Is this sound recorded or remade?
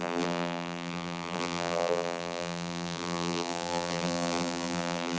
remade